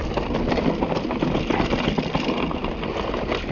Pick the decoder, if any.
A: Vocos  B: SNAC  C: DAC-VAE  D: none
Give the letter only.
D